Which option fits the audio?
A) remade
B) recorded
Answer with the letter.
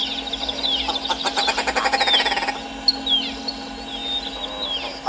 B